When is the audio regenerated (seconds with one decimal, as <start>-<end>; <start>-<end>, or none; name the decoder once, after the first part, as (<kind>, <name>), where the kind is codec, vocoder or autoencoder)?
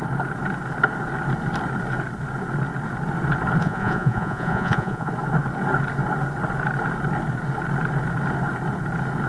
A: 3.6-5.1 (vocoder, Vocos)